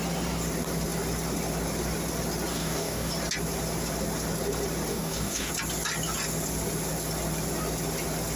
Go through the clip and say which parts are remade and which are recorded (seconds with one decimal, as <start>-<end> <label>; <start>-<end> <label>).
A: 0.0-2.5 recorded; 2.5-3.1 remade; 3.1-4.9 recorded; 4.9-5.5 remade; 5.5-8.4 recorded